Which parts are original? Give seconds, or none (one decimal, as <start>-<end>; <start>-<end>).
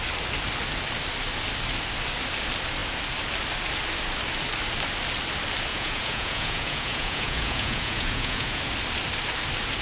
0.0-5.7; 8.6-9.8